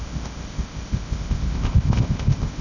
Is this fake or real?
fake